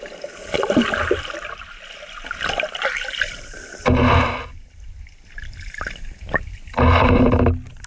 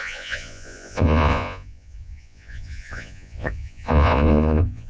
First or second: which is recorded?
first